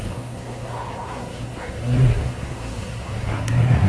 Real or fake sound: fake